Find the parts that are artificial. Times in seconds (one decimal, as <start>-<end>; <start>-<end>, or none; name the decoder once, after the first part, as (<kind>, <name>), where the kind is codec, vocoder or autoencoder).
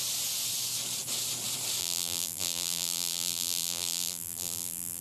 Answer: 1.8-5.0 (vocoder, BigVGAN v2)